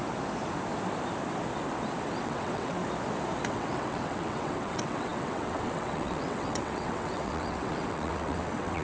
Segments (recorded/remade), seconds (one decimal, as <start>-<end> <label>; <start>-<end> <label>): 0.0-2.2 recorded; 2.2-2.8 remade; 2.8-3.5 recorded; 3.5-8.8 remade